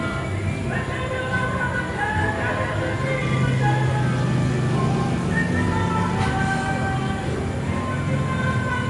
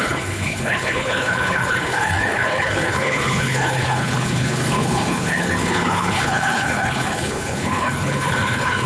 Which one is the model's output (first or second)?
second